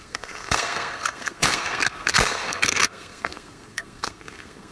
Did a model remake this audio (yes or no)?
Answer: yes